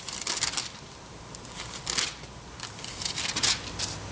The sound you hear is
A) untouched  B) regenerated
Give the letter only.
A